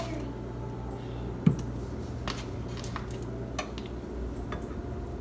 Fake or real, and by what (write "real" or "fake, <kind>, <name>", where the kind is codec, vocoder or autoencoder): real